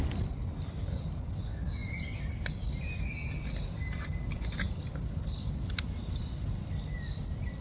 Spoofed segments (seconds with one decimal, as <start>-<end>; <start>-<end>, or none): none